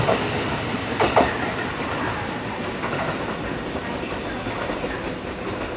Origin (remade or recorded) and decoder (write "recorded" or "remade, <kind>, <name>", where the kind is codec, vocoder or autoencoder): recorded